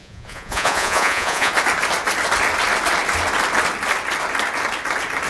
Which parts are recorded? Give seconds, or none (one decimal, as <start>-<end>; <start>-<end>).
1.5-5.3